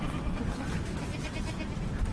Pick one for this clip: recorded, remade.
recorded